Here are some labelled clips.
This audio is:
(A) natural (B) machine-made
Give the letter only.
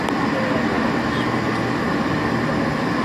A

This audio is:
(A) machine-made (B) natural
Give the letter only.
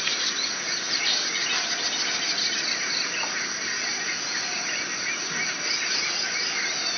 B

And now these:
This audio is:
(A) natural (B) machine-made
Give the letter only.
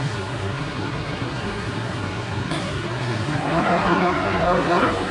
B